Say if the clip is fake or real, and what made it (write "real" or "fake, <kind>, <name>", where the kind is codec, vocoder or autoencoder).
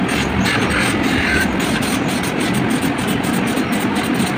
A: real